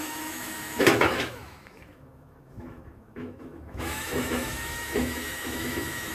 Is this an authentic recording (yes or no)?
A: no